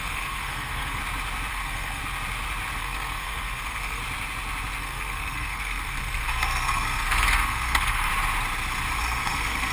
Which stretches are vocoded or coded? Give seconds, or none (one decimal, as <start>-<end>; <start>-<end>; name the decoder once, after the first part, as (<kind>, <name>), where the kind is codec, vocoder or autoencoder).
0.0-1.0 (codec, SNAC); 1.5-2.0; 2.8-4.0; 4.8-8.1; 9.0-9.7